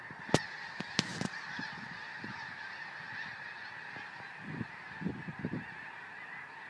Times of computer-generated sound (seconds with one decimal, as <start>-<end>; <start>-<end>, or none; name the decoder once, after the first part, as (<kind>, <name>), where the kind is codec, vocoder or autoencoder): none

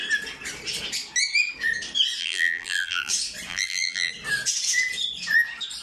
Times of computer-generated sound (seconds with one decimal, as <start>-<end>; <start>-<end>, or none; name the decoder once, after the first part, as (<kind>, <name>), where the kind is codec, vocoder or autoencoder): 2.2-3.1 (vocoder, BigVGAN v2); 3.5-4.1